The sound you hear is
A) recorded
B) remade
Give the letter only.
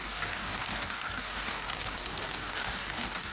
B